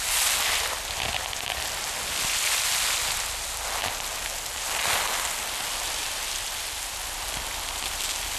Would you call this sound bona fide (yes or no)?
yes